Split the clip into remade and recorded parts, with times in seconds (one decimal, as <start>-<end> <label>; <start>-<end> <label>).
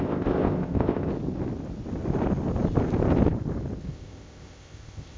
0.0-1.1 remade; 1.1-3.8 recorded; 3.8-5.2 remade